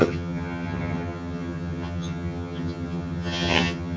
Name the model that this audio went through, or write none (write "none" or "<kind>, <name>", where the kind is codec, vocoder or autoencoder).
vocoder, HiFi-GAN